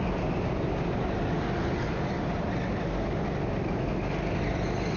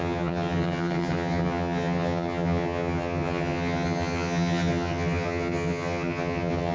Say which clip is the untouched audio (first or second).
first